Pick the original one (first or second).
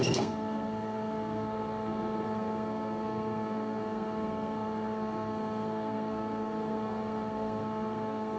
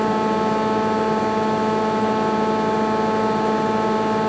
second